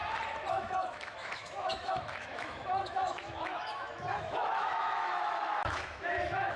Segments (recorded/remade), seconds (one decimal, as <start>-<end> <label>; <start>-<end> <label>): 0.0-0.5 recorded; 0.5-6.6 remade

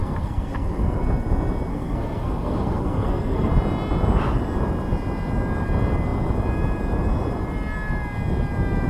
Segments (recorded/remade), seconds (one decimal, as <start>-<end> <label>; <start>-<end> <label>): 0.0-1.0 remade; 1.0-1.7 recorded; 1.7-3.5 remade; 3.5-8.9 recorded

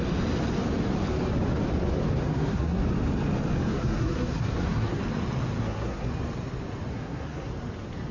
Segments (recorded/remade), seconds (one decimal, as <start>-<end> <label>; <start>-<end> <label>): 0.0-2.2 recorded; 2.2-2.8 remade; 2.8-3.7 recorded; 3.7-5.0 remade; 5.0-5.6 recorded; 5.6-6.1 remade; 6.1-6.9 recorded; 6.9-7.5 remade; 7.5-8.1 recorded

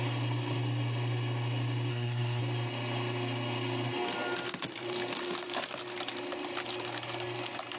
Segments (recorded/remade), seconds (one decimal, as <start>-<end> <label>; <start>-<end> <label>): 0.0-1.9 recorded; 1.9-2.4 remade; 2.4-7.8 recorded

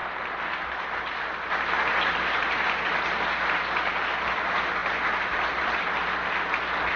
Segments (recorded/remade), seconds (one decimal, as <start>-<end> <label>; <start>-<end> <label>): 0.0-7.0 recorded

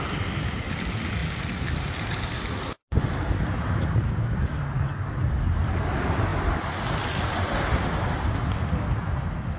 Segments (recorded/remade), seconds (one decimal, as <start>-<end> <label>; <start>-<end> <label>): 0.0-9.6 recorded

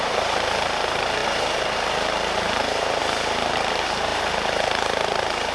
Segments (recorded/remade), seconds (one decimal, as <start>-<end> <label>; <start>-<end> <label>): 0.0-5.5 remade

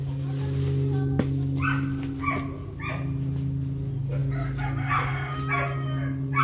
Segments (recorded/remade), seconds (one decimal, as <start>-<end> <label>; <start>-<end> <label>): 0.0-6.4 recorded